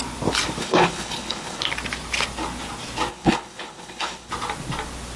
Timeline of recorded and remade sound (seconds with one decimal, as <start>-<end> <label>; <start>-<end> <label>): 0.0-0.6 recorded; 0.6-1.6 remade; 1.6-3.1 recorded; 3.1-4.3 remade; 4.3-5.2 recorded